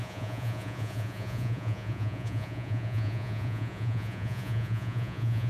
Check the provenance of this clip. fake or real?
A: fake